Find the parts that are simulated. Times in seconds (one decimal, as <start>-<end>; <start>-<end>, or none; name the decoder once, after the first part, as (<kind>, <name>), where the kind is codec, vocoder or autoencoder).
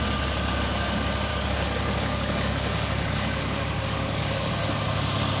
1.3-4.5 (codec, DAC)